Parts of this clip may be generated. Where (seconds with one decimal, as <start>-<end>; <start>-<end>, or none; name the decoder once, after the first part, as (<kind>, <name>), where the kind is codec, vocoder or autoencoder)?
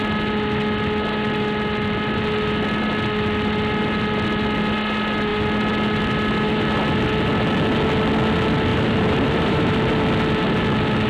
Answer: 8.7-9.7 (vocoder, BigVGAN v2)